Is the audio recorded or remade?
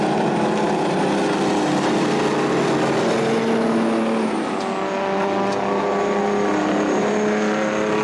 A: recorded